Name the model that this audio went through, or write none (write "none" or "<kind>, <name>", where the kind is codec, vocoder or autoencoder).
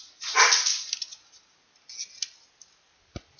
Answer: none